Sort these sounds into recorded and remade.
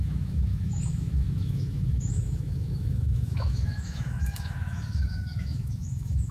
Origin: remade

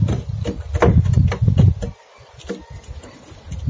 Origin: recorded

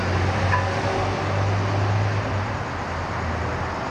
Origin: recorded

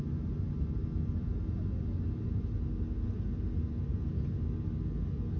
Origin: recorded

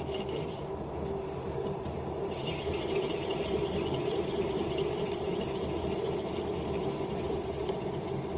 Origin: remade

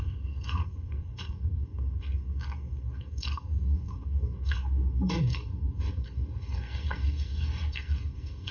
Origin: remade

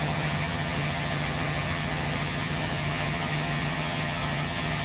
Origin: remade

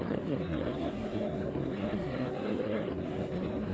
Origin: remade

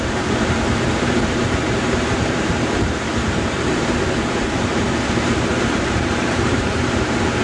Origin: remade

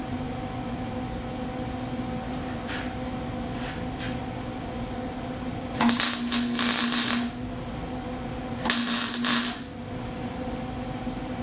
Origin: recorded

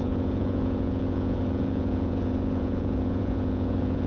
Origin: remade